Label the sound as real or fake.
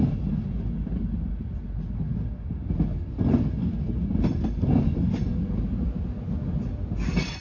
real